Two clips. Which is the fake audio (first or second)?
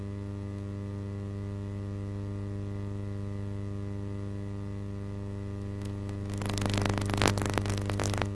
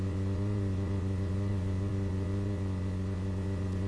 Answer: second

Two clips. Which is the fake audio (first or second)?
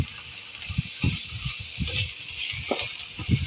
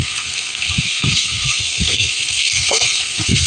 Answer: second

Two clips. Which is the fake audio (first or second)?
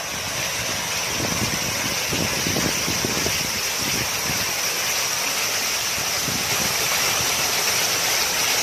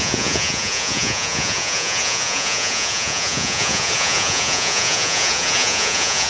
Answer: second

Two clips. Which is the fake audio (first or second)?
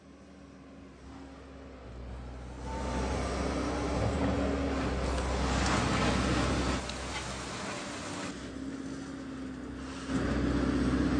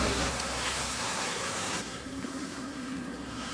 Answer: second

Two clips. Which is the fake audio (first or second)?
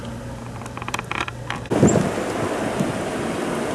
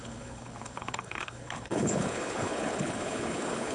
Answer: second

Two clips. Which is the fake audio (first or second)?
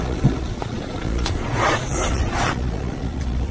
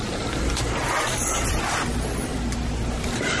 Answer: first